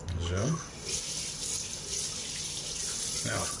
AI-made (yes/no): no